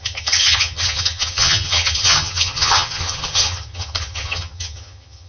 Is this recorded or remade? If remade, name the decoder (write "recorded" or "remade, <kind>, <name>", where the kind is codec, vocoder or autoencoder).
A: remade, vocoder, HiFi-GAN